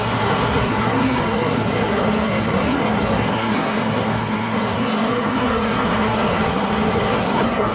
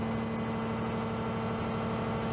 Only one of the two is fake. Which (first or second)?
first